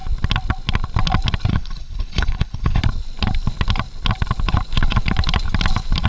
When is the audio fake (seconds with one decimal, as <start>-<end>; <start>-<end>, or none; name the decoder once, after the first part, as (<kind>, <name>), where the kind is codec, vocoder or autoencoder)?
1.5-2.8 (codec, HILCodec)

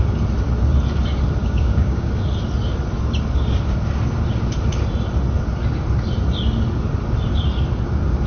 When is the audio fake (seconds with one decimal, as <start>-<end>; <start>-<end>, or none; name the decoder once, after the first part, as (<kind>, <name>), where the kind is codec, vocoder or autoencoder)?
1.4-2.1 (codec, DAC)